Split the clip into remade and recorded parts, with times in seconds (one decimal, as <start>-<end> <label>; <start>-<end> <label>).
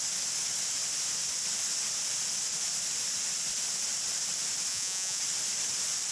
0.0-4.7 recorded; 4.7-5.2 remade; 5.2-6.1 recorded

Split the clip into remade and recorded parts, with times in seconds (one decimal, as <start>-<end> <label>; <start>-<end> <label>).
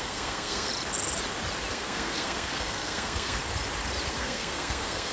0.0-0.7 remade; 0.7-1.7 recorded; 1.7-3.4 remade; 3.4-4.1 recorded; 4.1-5.1 remade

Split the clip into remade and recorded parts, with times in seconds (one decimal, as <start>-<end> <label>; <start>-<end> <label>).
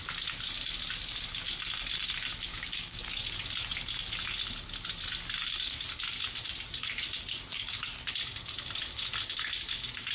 0.0-2.5 recorded; 2.5-3.4 remade; 3.4-7.5 recorded; 7.5-8.1 remade; 8.1-10.1 recorded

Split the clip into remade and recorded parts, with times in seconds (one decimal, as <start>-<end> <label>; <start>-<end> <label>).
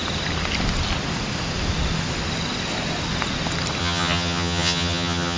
0.0-3.8 recorded; 3.8-5.4 remade